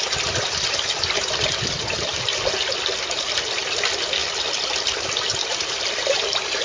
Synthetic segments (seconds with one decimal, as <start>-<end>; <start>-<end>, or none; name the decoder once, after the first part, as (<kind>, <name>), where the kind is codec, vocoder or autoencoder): none